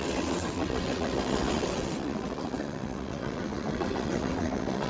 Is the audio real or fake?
fake